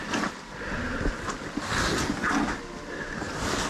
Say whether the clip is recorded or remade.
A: recorded